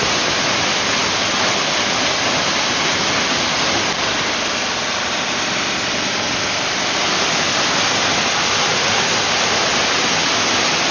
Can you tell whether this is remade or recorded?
recorded